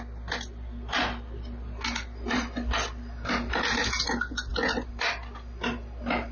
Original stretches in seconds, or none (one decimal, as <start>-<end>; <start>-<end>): 0.0-6.3